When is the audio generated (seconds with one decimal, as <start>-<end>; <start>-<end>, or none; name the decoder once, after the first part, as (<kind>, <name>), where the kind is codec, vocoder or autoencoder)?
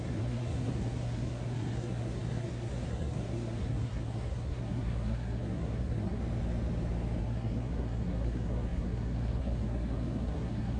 0.0-6.2 (codec, SNAC); 7.2-10.8